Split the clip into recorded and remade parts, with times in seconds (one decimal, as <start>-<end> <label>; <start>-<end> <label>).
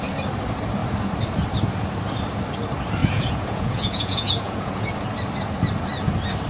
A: 0.0-3.0 recorded; 3.0-4.9 remade; 4.9-6.5 recorded